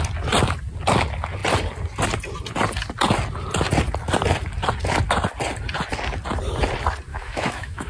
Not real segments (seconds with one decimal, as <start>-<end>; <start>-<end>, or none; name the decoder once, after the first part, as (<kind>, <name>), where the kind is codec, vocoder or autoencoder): 7.1-7.9 (autoencoder, DAC-VAE)